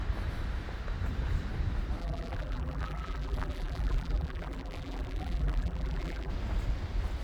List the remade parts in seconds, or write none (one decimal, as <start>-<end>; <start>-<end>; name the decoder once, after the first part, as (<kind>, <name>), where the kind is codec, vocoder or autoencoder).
2.0-6.3 (vocoder, BigVGAN v2)